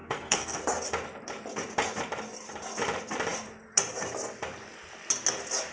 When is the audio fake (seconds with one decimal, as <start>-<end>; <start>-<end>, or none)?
0.0-0.6